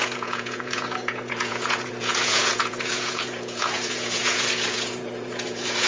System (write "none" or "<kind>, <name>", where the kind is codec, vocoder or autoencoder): vocoder, Vocos